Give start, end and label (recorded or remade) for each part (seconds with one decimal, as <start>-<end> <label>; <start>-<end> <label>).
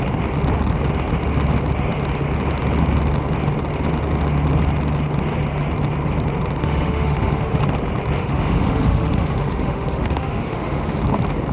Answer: 0.0-6.6 recorded; 6.6-7.6 remade; 7.6-8.2 recorded; 8.2-11.0 remade; 11.0-11.5 recorded